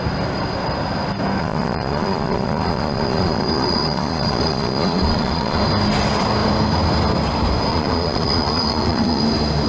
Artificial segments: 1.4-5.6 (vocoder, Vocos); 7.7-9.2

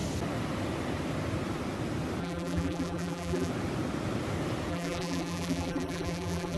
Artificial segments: 2.2-3.5 (vocoder, BigVGAN v2); 4.7-6.6